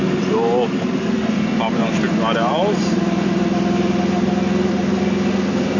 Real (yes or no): yes